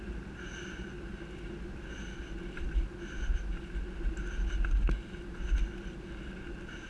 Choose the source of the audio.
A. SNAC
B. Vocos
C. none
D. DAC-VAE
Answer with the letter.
C